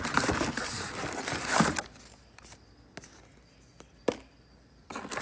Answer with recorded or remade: recorded